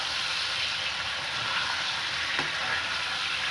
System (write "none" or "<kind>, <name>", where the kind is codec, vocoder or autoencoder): none